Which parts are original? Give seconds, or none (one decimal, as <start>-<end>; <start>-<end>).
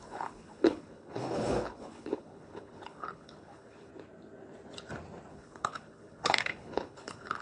3.9-5.3